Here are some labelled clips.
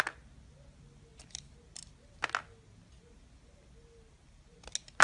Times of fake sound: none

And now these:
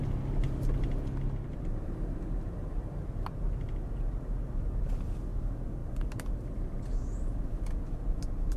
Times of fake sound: none

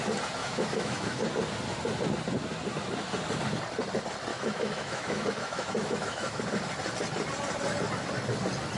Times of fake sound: 0.4-1.2 (autoencoder, DAC-VAE); 4.3-6.4

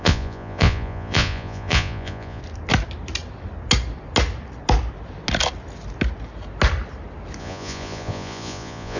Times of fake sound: 0.0-2.4 (vocoder, Vocos); 7.4-9.0

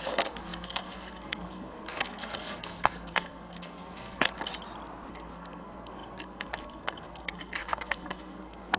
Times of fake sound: 0.0-4.5 (codec, SNAC); 5.1-8.8

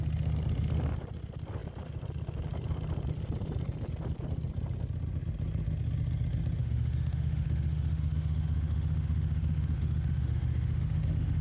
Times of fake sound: 6.6-11.4 (autoencoder, DAC-VAE)

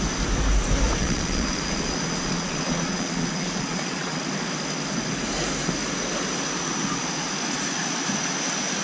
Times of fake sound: 1.0-4.2 (vocoder, Vocos)